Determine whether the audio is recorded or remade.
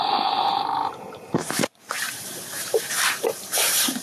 remade